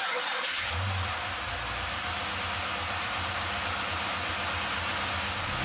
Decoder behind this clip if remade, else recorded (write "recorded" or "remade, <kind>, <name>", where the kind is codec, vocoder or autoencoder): recorded